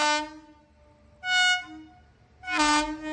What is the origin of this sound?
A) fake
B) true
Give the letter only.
B